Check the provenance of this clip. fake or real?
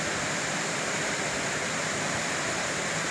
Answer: real